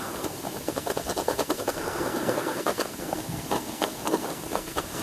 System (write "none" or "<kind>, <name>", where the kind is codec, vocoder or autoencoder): codec, SNAC